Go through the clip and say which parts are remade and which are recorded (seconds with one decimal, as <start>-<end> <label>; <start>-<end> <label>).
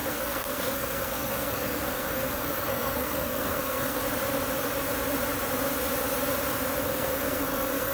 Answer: 0.0-4.0 remade; 4.0-6.8 recorded; 6.8-7.9 remade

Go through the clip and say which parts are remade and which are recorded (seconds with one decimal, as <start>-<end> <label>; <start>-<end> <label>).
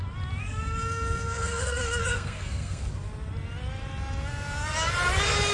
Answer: 0.0-0.4 recorded; 0.4-2.9 remade; 2.9-5.5 recorded